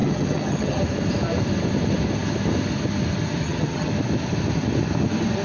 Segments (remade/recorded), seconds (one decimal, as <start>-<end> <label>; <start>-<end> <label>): 0.0-0.8 remade; 0.8-3.4 recorded; 3.4-3.9 remade; 3.9-5.4 recorded